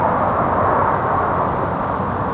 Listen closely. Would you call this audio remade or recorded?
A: recorded